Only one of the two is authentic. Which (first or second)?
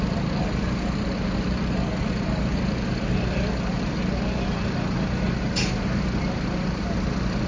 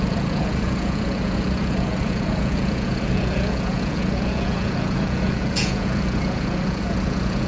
first